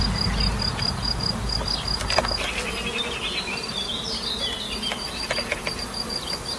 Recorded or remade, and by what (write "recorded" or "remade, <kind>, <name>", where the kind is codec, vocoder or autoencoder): recorded